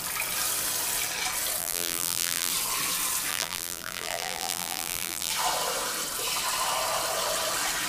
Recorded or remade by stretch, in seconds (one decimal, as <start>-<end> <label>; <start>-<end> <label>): 0.0-1.6 recorded; 1.6-2.5 remade; 2.5-3.3 recorded; 3.3-5.3 remade; 5.3-7.9 recorded